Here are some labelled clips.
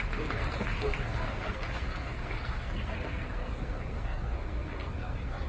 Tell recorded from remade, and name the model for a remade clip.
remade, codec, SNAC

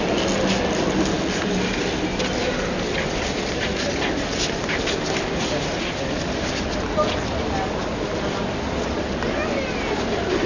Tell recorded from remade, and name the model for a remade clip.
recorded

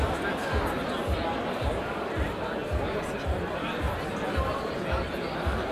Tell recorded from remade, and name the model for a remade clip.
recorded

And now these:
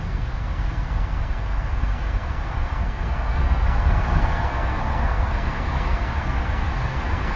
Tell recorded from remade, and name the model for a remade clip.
remade, codec, SNAC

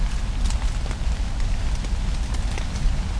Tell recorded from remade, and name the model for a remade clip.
recorded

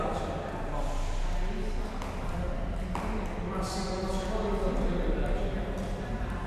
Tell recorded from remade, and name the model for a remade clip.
recorded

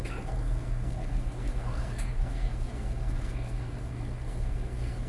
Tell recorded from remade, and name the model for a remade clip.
remade, codec, SNAC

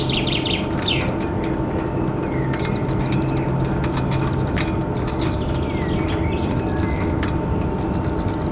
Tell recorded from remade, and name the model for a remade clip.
recorded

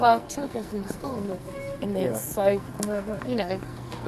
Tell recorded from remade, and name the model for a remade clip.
remade, codec, SNAC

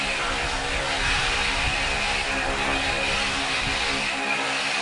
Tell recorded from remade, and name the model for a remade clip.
recorded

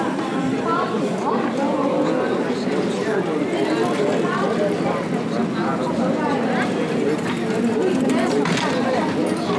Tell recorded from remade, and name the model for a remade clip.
recorded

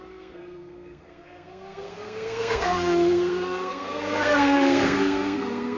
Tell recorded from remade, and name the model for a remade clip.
remade, codec, SNAC